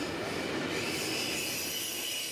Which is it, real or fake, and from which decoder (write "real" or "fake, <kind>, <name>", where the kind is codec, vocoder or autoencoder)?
real